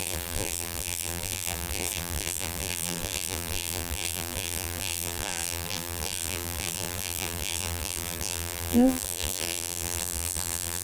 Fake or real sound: fake